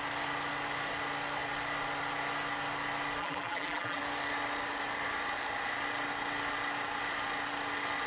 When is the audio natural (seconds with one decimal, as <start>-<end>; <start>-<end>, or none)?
0.0-3.2; 4.0-8.1